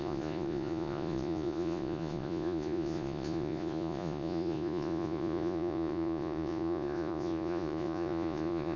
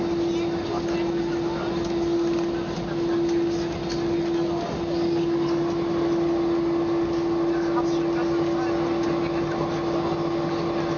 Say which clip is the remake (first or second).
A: first